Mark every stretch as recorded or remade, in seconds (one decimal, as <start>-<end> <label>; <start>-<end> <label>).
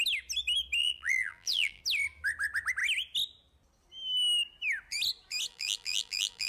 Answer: 0.0-0.8 recorded; 0.8-1.8 remade; 1.8-5.5 recorded; 5.5-6.5 remade